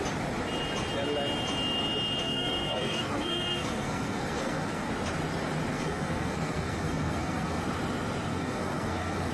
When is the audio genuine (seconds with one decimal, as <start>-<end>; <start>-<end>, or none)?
0.0-2.2; 4.9-5.7; 7.6-8.3